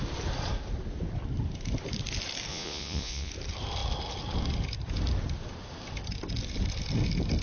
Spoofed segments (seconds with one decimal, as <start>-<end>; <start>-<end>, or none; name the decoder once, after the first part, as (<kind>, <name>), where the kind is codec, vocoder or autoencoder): 2.5-3.3 (vocoder, Vocos)